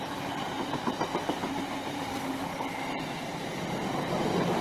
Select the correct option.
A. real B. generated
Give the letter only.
A